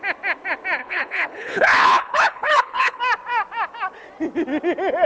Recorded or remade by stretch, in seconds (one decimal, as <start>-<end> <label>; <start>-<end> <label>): 0.0-0.8 recorded; 0.8-3.0 remade; 3.0-5.1 recorded